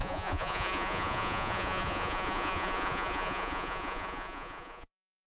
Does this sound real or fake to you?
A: fake